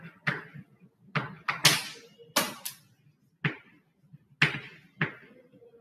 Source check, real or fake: real